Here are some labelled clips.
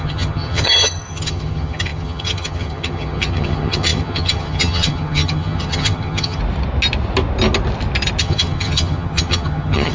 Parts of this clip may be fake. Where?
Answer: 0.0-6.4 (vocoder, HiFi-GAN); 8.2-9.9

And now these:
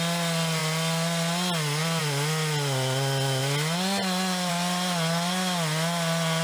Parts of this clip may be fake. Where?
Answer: none

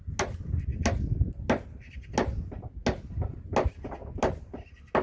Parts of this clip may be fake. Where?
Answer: none

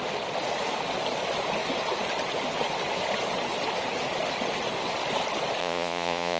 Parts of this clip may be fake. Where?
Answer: 5.6-6.4 (vocoder, Vocos)